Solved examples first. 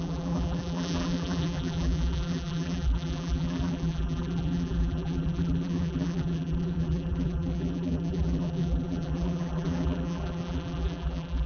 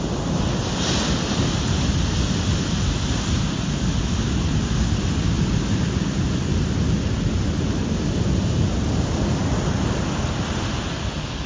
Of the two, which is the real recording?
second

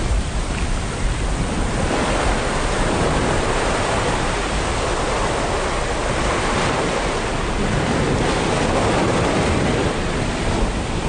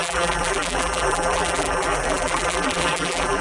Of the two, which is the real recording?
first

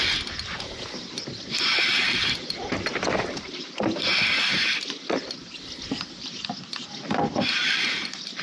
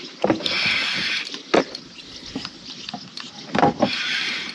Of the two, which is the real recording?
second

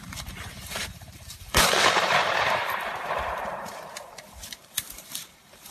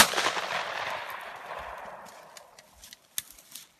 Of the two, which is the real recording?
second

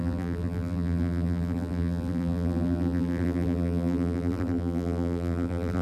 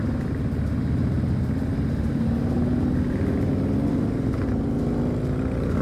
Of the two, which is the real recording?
second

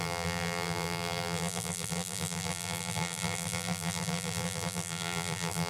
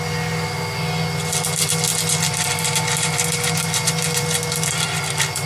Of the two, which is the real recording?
second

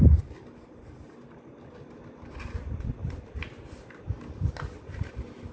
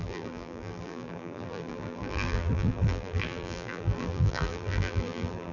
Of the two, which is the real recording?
first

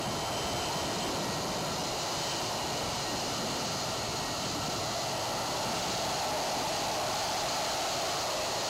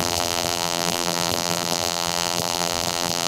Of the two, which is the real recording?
first